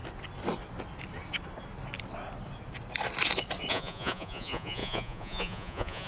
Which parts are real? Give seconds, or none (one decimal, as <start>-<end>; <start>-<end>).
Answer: 0.0-3.7